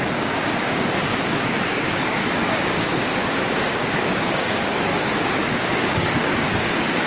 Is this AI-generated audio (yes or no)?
yes